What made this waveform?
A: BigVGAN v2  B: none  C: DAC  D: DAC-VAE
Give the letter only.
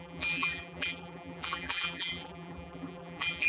A